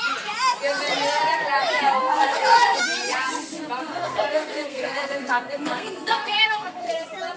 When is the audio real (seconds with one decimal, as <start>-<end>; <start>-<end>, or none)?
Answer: 0.0-2.0; 2.8-3.8; 6.9-7.4